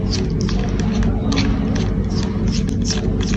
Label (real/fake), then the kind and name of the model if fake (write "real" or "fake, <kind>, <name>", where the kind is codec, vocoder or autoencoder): real